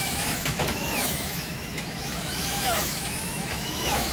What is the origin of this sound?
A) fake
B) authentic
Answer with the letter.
A